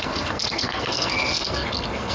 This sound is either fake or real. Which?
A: fake